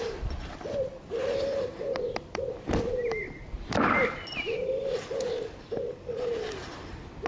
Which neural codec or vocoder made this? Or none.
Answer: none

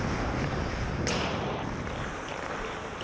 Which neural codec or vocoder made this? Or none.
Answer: none